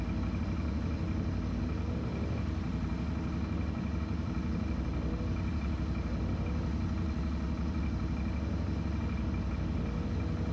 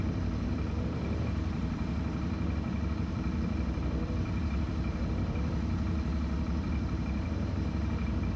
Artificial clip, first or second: second